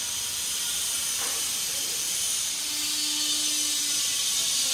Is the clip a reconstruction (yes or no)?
no